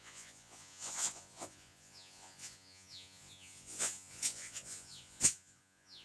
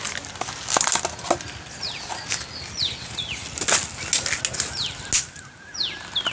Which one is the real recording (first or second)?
second